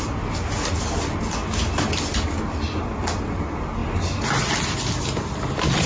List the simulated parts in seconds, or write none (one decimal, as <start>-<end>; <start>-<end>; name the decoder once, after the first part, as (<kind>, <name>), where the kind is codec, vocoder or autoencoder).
none

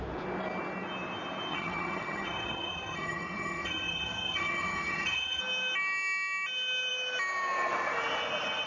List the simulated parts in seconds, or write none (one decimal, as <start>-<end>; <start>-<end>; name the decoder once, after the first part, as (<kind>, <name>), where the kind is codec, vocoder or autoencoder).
1.5-5.4 (vocoder, HiFi-GAN)

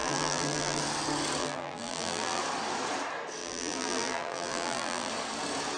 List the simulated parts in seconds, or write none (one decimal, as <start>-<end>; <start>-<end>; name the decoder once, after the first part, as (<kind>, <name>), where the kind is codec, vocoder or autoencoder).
0.0-0.8 (vocoder, BigVGAN v2); 1.4-2.4; 3.4-5.1

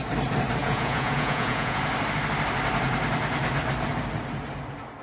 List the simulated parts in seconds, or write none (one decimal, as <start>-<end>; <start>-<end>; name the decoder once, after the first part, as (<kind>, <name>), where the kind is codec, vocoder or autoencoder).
0.6-1.8 (vocoder, Vocos)

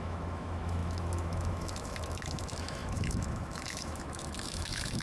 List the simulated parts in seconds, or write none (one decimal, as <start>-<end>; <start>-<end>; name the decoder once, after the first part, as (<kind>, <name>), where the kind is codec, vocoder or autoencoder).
0.0-5.0 (autoencoder, DAC-VAE)

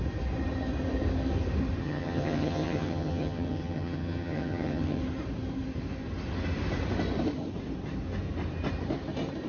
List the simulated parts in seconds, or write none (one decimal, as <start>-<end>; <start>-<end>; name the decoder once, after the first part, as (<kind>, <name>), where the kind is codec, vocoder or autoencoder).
1.8-5.0 (vocoder, HiFi-GAN)